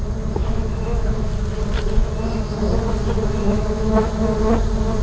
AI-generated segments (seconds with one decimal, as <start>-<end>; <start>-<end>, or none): 0.4-1.3; 3.4-4.1